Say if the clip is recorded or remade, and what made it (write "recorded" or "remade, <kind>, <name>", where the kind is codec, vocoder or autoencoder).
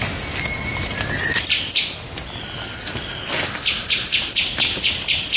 recorded